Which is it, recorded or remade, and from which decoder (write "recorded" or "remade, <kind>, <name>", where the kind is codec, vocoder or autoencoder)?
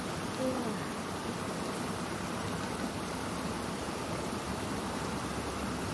remade, vocoder, BigVGAN v2